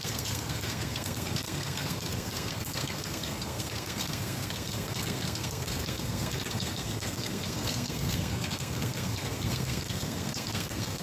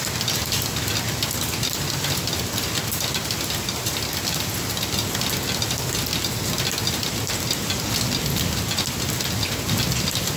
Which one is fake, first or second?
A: first